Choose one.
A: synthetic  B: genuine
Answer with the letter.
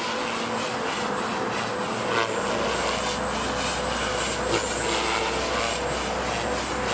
B